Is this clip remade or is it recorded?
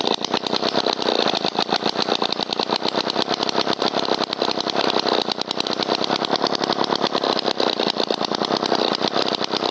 recorded